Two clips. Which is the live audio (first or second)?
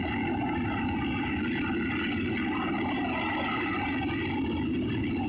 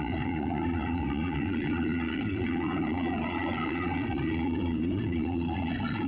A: first